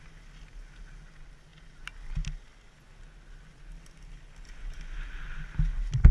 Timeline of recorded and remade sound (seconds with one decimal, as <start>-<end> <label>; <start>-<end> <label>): 0.0-6.1 recorded